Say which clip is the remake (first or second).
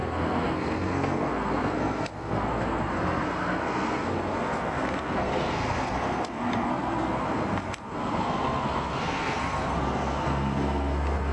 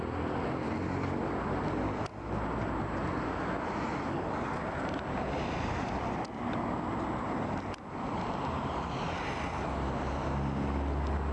first